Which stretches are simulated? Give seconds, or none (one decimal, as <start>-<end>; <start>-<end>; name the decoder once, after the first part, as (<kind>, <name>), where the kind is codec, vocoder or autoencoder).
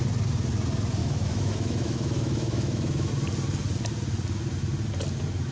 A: 1.0-3.1 (autoencoder, DAC-VAE)